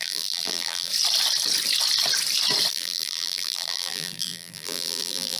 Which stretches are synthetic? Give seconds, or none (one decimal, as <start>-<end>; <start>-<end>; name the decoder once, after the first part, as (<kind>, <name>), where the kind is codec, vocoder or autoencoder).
0.0-0.9 (vocoder, BigVGAN v2); 2.7-5.4